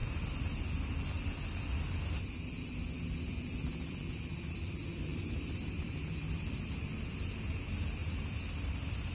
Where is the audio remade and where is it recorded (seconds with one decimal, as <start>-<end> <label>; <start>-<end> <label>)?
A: 0.0-5.1 recorded; 5.1-6.7 remade; 6.7-8.0 recorded; 8.0-8.7 remade; 8.7-9.1 recorded